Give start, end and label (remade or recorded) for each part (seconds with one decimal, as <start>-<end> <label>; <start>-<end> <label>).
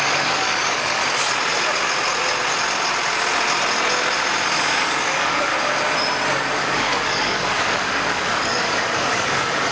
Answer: 0.0-1.0 remade; 1.0-4.4 recorded; 4.4-5.5 remade; 5.5-6.6 recorded; 6.6-9.7 remade